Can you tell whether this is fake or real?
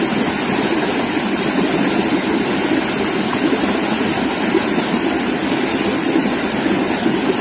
real